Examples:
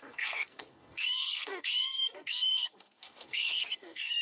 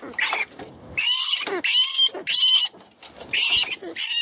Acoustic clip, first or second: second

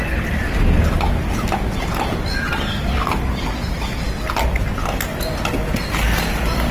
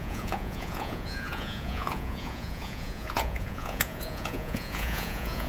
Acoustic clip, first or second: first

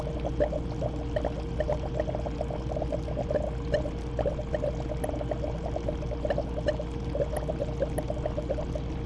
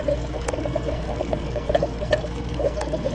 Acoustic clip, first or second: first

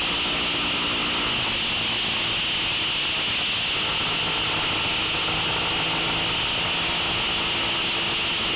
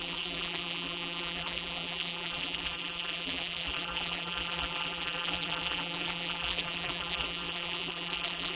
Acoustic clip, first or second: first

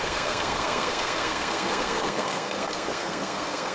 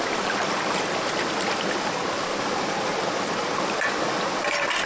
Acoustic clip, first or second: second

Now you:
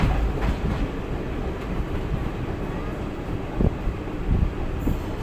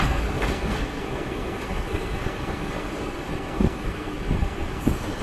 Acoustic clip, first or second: first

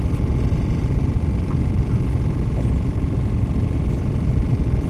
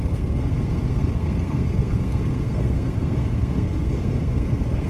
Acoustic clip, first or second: first